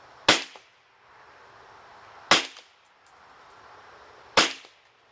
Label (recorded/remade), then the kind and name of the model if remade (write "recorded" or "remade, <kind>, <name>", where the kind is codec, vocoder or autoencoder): recorded